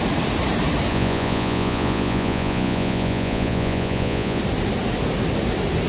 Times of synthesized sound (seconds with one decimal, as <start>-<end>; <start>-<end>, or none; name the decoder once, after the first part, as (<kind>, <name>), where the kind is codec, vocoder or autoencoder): 0.9-4.4 (vocoder, Vocos)